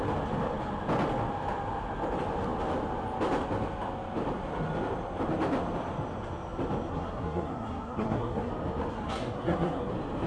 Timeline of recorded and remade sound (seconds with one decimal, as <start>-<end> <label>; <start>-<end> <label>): 0.0-6.9 recorded; 6.9-8.5 remade; 8.5-8.9 recorded; 8.9-9.9 remade; 9.9-10.3 recorded